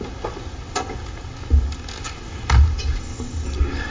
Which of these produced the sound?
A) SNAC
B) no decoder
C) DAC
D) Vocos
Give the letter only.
B